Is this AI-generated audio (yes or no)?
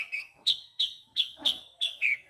yes